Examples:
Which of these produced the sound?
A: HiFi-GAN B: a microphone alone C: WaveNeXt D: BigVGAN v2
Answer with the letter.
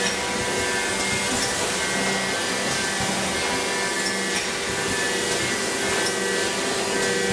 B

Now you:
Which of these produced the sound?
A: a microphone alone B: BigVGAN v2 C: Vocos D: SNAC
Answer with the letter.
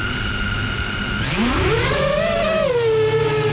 A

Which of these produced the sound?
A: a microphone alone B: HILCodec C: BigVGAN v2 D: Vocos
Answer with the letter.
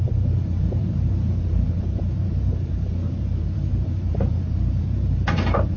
C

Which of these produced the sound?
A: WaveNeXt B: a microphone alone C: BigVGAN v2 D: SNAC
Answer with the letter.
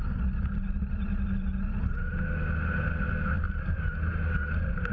B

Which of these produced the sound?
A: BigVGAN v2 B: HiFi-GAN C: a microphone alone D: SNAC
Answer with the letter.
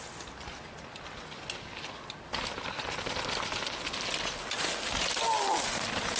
C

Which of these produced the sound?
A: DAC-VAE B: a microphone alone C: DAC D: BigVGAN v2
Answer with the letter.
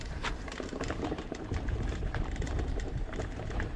D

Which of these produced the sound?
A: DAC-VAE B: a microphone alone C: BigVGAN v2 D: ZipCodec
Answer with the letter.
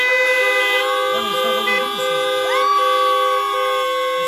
B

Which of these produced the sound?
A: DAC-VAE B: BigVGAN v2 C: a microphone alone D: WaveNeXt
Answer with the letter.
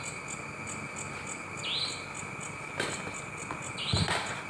C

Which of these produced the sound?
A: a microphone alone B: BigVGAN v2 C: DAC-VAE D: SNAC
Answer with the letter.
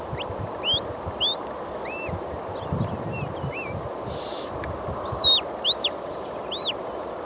A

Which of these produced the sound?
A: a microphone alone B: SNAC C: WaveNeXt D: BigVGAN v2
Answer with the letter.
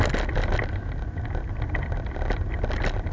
A